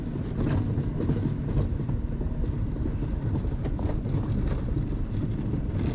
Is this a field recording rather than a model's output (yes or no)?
yes